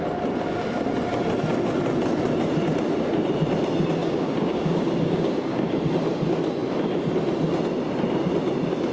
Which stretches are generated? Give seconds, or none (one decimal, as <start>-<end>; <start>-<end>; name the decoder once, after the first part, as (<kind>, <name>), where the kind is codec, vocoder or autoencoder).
4.0-5.7 (codec, DAC)